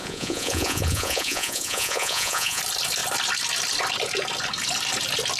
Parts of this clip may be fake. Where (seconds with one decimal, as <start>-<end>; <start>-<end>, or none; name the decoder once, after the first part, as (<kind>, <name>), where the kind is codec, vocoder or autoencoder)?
0.0-2.6 (vocoder, Vocos)